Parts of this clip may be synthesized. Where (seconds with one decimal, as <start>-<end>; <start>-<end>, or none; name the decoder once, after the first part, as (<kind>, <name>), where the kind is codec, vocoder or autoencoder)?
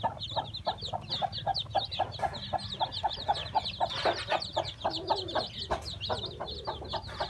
none